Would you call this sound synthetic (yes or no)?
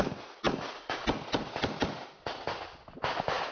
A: no